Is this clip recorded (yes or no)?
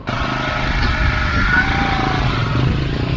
yes